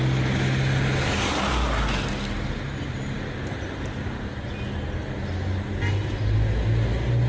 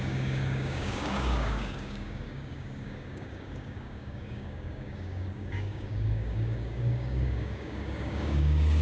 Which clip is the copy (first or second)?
second